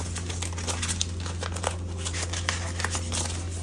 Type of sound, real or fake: real